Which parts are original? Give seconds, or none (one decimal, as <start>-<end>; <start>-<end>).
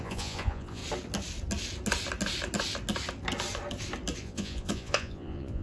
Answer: 0.8-4.2